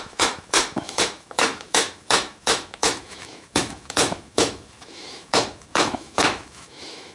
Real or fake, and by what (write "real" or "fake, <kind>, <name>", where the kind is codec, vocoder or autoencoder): fake, autoencoder, DAC-VAE